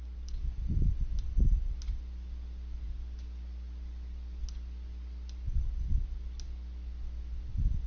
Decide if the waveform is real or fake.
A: real